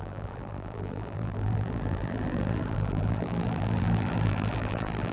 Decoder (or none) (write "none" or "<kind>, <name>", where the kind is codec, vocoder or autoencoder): vocoder, BigVGAN v2